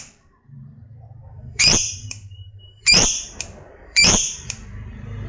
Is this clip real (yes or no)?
no